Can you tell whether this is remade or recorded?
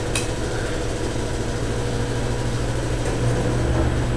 recorded